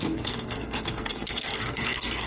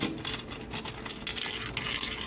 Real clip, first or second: second